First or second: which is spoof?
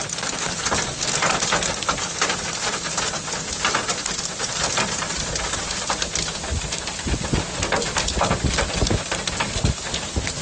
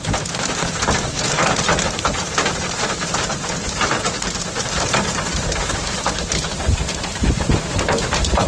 second